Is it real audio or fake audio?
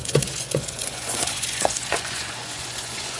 fake